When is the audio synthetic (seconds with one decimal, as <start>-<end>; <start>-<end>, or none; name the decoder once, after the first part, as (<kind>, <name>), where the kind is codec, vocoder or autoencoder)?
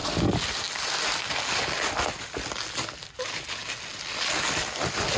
none